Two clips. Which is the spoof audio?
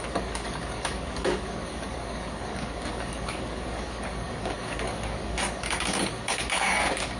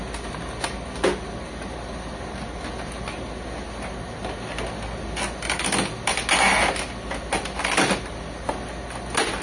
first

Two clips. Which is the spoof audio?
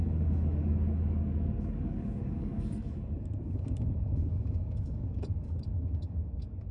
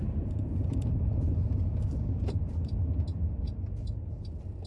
first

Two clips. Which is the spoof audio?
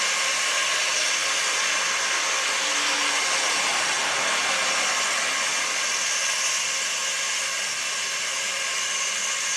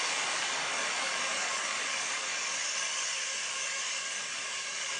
second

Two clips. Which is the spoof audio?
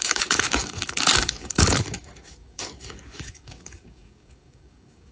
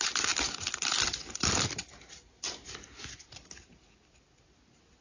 first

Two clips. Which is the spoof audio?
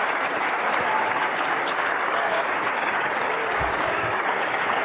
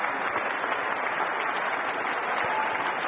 first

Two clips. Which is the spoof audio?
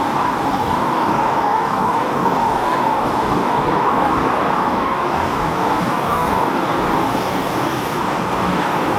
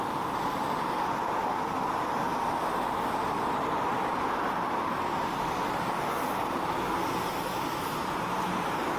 first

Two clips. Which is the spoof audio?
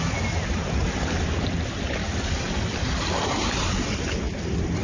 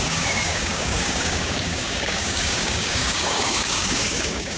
second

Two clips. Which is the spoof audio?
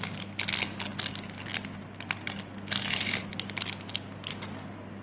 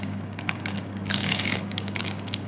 second